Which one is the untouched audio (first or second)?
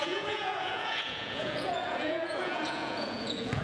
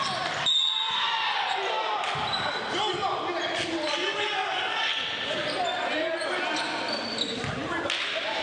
second